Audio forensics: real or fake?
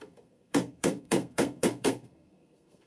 fake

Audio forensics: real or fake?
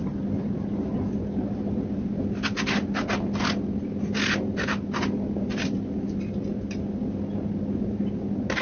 real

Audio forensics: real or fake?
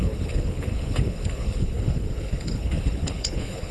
fake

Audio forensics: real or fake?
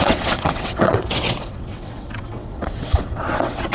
fake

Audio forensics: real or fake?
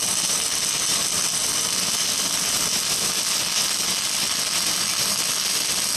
real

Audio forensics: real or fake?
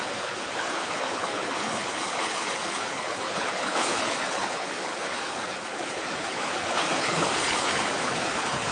fake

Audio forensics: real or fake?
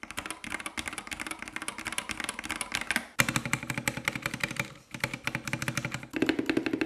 real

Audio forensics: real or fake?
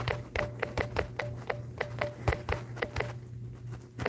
real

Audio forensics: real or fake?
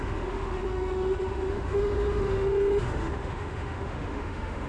fake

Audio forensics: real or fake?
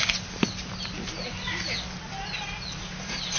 real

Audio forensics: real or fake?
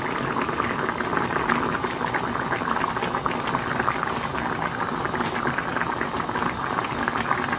real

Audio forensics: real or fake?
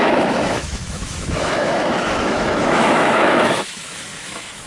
fake